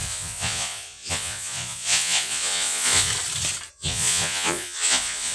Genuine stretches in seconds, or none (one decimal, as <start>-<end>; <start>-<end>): 3.1-3.7